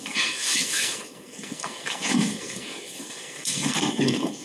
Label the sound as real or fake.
fake